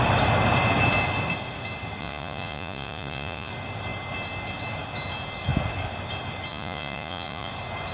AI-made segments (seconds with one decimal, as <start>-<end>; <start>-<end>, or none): 2.0-3.5; 6.5-7.5